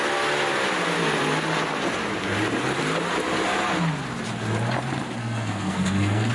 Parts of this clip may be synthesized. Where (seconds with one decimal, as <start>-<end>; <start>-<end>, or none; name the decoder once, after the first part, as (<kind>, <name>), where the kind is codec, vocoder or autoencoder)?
5.2-6.3 (codec, SNAC)